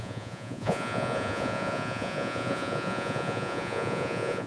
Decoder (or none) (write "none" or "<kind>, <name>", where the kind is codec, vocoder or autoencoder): vocoder, Vocos